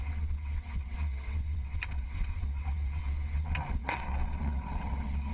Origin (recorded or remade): remade